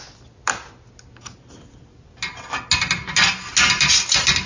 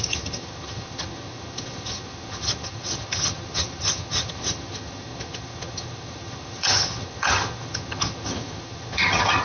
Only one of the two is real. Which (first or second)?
first